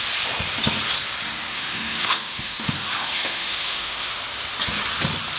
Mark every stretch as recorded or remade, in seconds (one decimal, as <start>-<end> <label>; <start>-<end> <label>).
0.0-1.5 recorded; 1.5-4.2 remade; 4.2-5.4 recorded